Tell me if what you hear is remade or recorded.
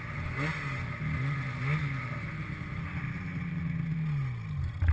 recorded